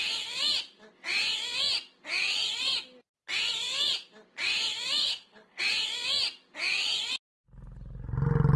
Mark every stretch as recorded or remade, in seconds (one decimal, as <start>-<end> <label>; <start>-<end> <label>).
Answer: 0.0-5.0 recorded; 5.0-5.6 remade; 5.6-8.6 recorded